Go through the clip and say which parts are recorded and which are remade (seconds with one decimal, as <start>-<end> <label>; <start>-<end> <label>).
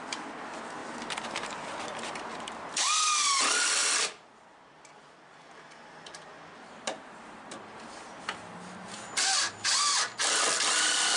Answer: 0.0-3.8 recorded; 3.8-7.4 remade; 7.4-11.2 recorded